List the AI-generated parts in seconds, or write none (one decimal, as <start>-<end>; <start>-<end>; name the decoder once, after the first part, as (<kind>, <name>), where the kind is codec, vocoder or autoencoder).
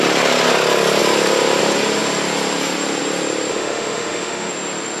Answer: 3.5-4.5 (autoencoder, DAC-VAE)